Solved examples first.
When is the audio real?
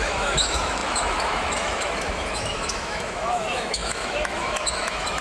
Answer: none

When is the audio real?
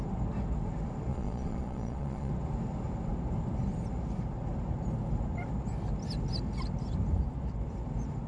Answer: 0.0-1.1; 2.3-8.3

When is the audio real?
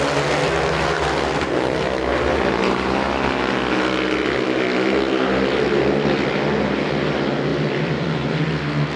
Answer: 0.0-7.5; 8.1-9.0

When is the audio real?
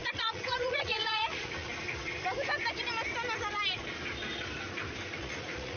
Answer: 1.7-5.2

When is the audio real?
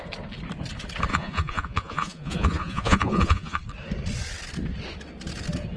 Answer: 0.0-1.1; 3.6-5.8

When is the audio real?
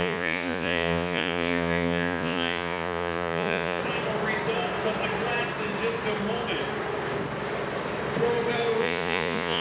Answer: 3.8-8.8